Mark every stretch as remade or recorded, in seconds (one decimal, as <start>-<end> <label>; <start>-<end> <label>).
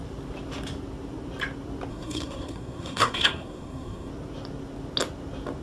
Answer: 0.0-1.9 recorded; 1.9-4.1 remade; 4.1-5.6 recorded